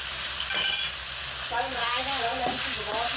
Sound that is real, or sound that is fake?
real